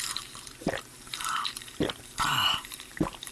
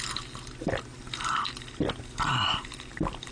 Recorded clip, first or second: second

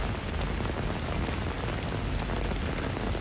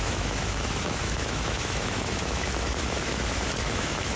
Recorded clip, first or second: first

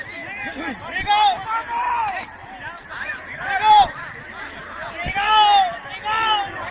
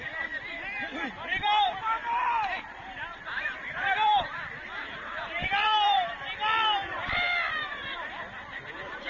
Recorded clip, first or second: first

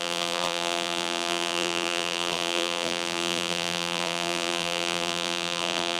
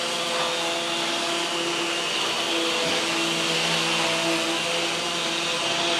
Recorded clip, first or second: second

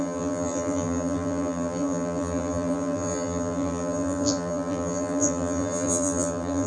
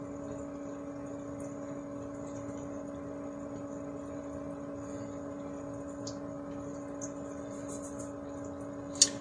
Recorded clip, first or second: second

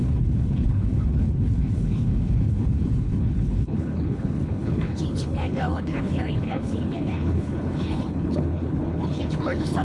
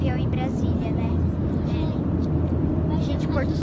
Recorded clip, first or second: second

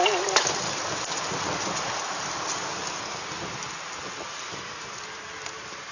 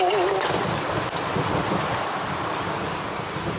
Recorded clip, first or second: first